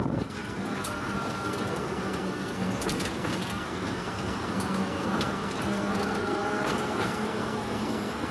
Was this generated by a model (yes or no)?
yes